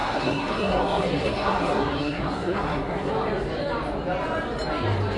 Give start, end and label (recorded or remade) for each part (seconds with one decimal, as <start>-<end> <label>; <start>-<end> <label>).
0.0-3.1 remade; 3.1-5.2 recorded